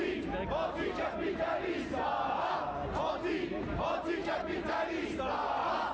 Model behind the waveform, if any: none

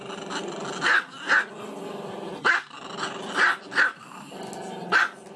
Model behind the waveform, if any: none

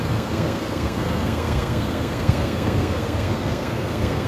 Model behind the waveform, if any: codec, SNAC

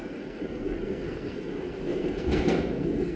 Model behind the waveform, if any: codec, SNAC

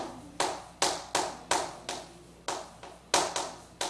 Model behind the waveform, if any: none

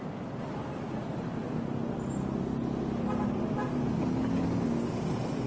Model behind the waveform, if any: none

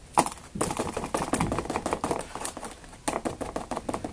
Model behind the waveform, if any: none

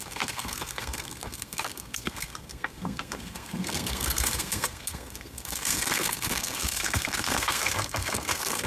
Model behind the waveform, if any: codec, SNAC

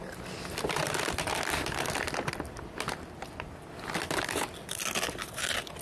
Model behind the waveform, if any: none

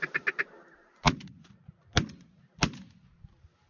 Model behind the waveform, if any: none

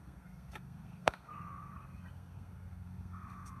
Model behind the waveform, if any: codec, SNAC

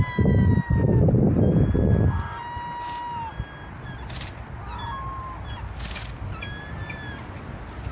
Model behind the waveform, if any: none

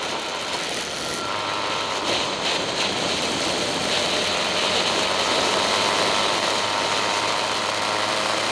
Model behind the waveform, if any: none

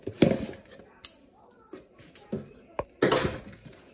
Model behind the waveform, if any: none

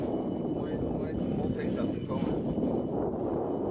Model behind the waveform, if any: none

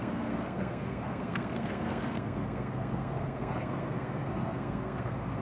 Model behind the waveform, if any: codec, SNAC